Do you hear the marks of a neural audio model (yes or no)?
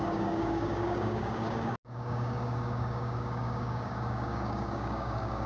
yes